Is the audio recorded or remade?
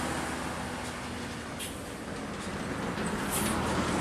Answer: recorded